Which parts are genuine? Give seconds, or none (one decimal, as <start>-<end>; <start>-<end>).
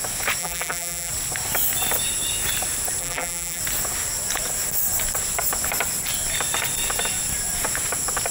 0.0-0.4; 1.1-3.0; 3.6-8.3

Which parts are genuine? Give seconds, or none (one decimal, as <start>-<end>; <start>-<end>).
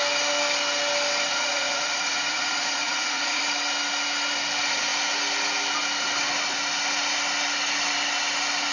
0.0-1.3; 3.4-8.7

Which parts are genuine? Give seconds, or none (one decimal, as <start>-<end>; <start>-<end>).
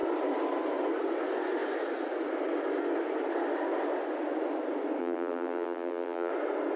0.0-5.0; 6.3-6.8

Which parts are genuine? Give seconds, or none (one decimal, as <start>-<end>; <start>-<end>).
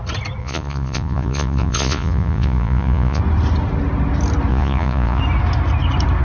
0.0-0.4; 3.2-4.5; 5.2-6.2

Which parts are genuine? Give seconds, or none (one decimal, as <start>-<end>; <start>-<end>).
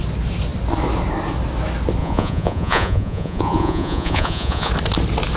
0.0-2.0; 4.7-5.4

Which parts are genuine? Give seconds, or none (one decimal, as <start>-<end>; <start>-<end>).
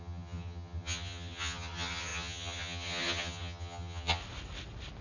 4.2-5.0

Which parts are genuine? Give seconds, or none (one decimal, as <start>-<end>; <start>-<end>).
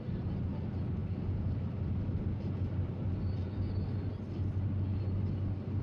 0.0-5.8